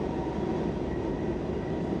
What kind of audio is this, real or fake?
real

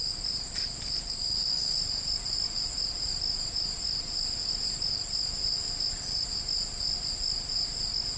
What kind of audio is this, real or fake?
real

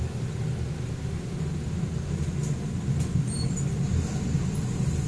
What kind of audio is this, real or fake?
real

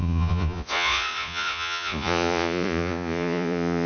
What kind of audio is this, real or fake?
fake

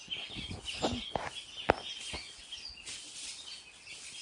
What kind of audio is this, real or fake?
real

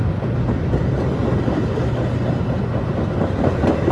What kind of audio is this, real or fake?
real